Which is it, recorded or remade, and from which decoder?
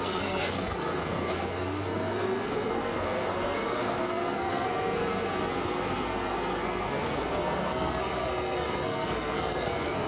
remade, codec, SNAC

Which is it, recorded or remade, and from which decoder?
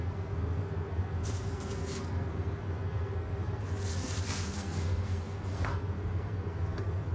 remade, codec, SNAC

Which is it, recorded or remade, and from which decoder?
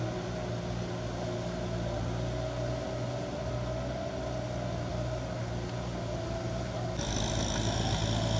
recorded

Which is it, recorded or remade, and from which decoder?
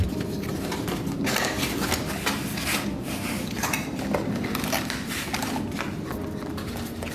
recorded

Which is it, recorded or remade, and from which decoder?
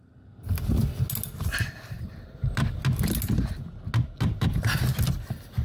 recorded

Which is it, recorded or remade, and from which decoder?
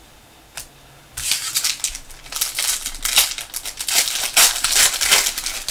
recorded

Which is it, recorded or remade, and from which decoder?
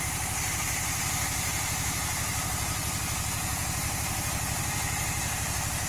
recorded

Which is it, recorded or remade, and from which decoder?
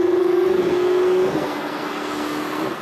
remade, codec, SNAC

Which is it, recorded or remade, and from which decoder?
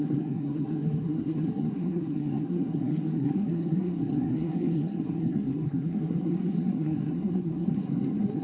remade, codec, SNAC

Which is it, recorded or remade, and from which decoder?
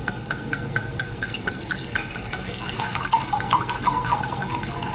remade, codec, SNAC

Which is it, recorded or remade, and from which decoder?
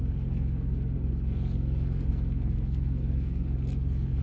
remade, codec, SNAC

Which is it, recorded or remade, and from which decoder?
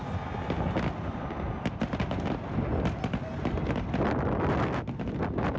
recorded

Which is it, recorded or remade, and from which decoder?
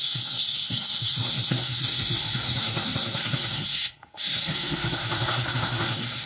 remade, codec, SNAC